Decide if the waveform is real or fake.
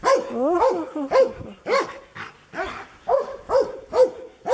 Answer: real